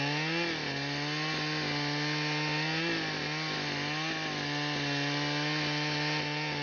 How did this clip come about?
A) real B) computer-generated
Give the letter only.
A